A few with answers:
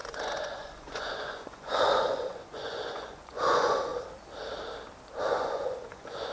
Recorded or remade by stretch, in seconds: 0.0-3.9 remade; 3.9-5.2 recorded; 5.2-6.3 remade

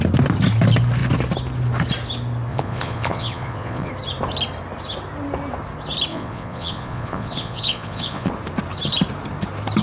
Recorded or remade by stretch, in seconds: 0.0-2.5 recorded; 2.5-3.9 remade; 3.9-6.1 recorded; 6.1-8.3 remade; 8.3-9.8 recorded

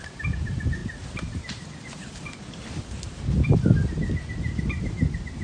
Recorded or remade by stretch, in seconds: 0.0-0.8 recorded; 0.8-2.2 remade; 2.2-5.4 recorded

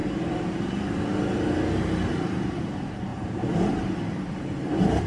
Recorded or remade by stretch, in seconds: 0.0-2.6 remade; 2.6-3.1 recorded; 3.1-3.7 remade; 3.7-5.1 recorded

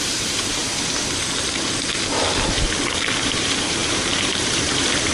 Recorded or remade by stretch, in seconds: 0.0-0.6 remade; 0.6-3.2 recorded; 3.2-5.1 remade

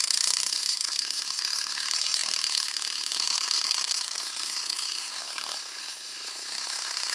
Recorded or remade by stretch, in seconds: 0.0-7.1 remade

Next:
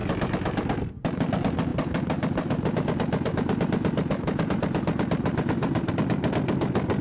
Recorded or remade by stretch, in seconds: 0.0-0.9 remade; 0.9-1.7 recorded; 1.7-5.9 remade; 5.9-7.0 recorded

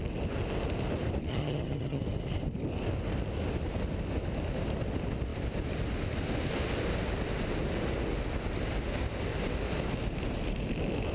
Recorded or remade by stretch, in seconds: 0.0-1.3 recorded; 1.3-2.0 remade; 2.0-11.1 recorded